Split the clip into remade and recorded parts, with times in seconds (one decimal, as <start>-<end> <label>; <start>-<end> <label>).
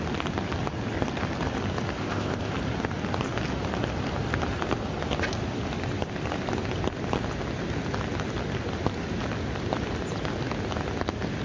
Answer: 0.0-2.0 recorded; 2.0-2.5 remade; 2.5-11.4 recorded